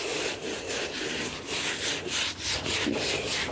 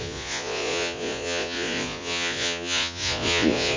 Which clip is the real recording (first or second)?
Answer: first